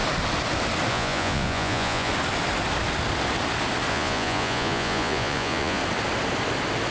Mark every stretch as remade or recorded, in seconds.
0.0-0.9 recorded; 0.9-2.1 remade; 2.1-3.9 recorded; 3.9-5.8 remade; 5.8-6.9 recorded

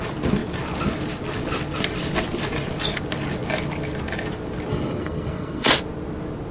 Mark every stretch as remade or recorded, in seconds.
0.0-4.7 recorded; 4.7-5.7 remade; 5.7-6.5 recorded

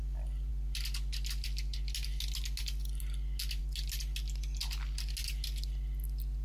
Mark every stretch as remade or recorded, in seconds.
0.0-6.4 recorded

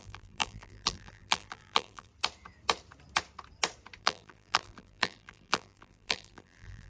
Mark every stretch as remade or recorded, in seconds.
0.0-2.1 remade; 2.1-4.0 recorded; 4.0-6.9 remade

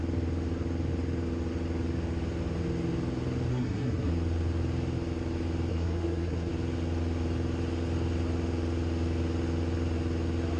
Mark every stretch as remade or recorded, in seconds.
0.0-3.5 recorded; 3.5-4.1 remade; 4.1-5.7 recorded; 5.7-6.5 remade; 6.5-10.6 recorded

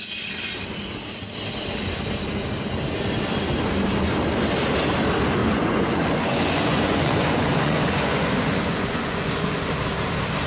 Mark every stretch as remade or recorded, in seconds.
0.0-5.4 recorded; 5.4-9.7 remade; 9.7-10.5 recorded

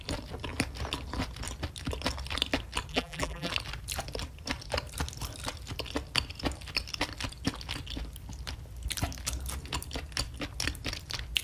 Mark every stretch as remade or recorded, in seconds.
0.0-2.9 recorded; 2.9-3.5 remade; 3.5-11.4 recorded

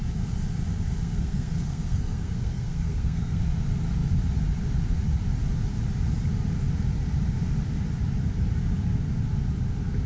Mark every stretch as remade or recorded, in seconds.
0.0-1.0 recorded; 1.0-3.4 remade; 3.4-10.1 recorded